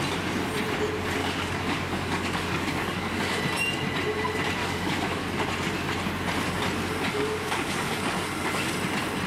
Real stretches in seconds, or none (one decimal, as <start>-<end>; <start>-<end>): 0.0-1.2; 3.4-4.6; 5.3-7.1; 8.7-9.3